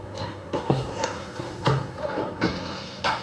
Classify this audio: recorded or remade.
remade